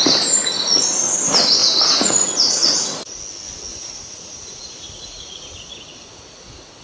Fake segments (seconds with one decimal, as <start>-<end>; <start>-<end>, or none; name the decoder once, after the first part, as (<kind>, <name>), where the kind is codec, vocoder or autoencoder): 0.4-1.2 (vocoder, Vocos); 1.6-3.2; 3.7-6.8